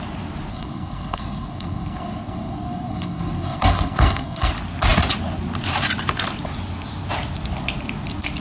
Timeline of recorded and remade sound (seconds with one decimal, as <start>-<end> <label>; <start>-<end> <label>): 0.0-0.5 recorded; 0.5-4.5 remade; 4.5-8.4 recorded